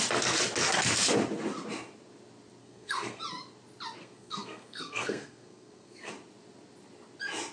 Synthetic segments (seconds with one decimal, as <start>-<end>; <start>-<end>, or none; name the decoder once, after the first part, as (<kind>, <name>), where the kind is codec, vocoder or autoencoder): 2.6-3.2 (codec, SNAC); 4.0-6.1